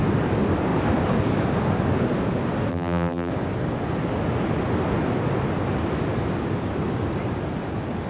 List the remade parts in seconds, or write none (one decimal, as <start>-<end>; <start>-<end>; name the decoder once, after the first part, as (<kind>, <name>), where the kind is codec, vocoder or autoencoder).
2.7-3.3 (vocoder, BigVGAN v2)